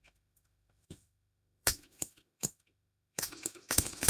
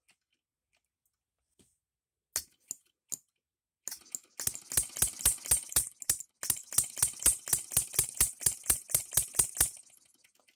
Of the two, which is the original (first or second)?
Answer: second